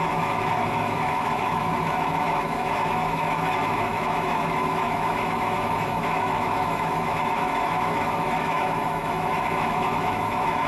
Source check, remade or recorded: remade